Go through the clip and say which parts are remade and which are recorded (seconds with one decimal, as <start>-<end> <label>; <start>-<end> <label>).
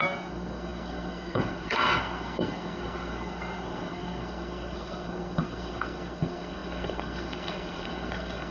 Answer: 0.0-8.5 remade